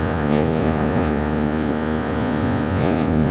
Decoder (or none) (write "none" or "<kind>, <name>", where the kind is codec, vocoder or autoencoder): vocoder, Vocos